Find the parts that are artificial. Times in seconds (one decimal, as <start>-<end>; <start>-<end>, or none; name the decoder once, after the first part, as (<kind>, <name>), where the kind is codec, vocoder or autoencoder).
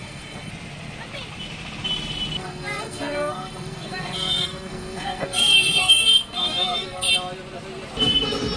0.0-0.5 (codec, SNAC); 2.4-7.1